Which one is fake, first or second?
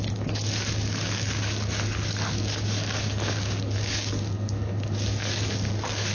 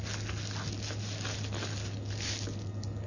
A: first